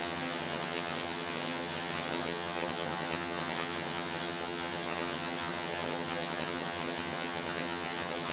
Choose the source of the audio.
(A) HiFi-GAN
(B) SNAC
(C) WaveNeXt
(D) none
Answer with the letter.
A